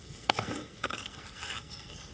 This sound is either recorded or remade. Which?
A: remade